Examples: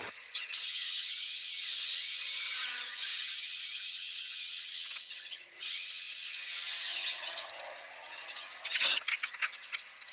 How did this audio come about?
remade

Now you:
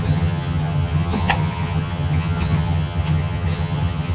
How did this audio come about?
remade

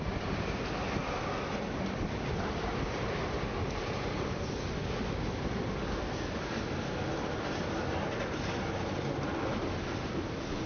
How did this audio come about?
recorded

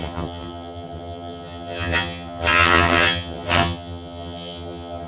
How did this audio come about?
remade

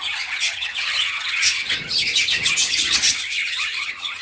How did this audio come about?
remade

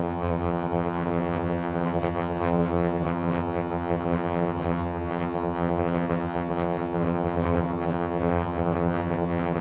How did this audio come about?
remade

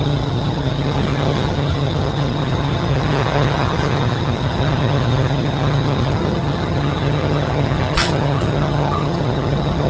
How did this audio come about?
remade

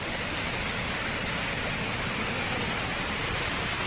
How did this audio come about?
recorded